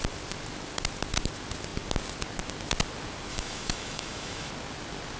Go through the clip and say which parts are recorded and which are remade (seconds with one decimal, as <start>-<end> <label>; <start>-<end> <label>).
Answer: 0.0-3.3 recorded; 3.3-4.5 remade; 4.5-5.2 recorded